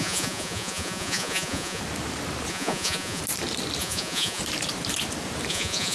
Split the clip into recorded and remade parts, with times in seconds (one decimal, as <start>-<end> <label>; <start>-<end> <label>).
0.0-1.8 remade; 1.8-2.5 recorded; 2.5-3.2 remade; 3.2-3.8 recorded; 3.8-4.4 remade; 4.4-5.5 recorded; 5.5-5.9 remade